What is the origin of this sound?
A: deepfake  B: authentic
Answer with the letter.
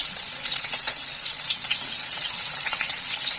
A